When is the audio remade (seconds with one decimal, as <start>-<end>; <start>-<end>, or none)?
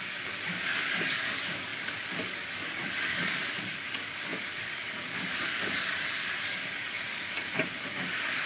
0.0-8.5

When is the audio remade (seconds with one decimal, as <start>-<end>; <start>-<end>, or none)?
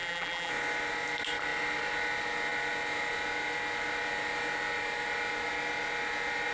0.0-0.5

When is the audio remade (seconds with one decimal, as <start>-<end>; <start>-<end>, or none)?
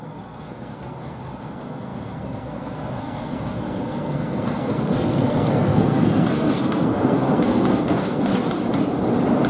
0.0-8.3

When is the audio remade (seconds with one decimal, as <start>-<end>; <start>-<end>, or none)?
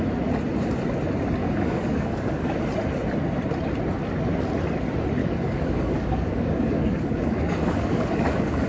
1.4-2.6; 5.2-8.7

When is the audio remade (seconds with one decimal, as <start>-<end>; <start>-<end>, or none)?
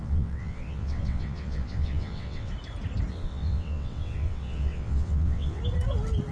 0.0-2.5; 3.1-5.6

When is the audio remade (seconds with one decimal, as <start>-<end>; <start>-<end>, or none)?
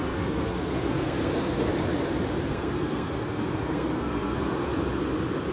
0.0-1.7; 2.5-4.6